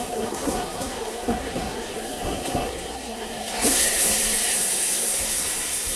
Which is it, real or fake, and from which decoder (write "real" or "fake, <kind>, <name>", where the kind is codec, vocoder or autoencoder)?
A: fake, codec, SNAC